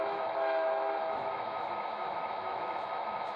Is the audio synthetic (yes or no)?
yes